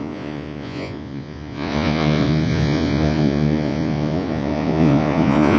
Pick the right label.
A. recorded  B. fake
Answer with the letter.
B